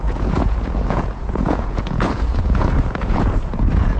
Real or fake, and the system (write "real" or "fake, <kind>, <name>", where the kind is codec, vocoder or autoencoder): fake, vocoder, Vocos